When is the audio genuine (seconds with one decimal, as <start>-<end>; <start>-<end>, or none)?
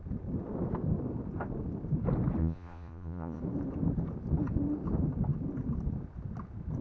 0.0-2.4; 3.4-6.8